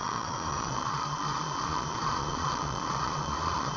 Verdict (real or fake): fake